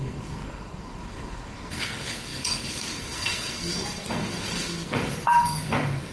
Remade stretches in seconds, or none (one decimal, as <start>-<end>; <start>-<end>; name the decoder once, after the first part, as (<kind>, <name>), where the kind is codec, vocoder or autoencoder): 0.0-6.1 (codec, SNAC)